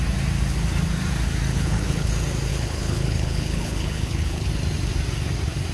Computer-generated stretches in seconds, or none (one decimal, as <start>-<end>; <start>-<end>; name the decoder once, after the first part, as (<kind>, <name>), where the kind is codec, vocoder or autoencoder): 1.5-2.1 (codec, HILCodec); 2.5-4.5